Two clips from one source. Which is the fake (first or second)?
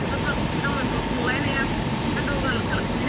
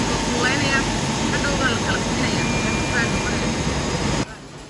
first